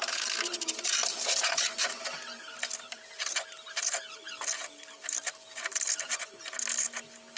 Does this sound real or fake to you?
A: real